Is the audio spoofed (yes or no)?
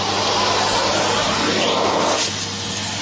no